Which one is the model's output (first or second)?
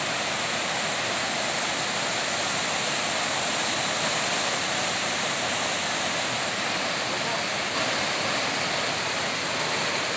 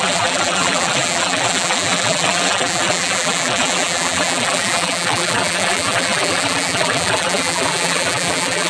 second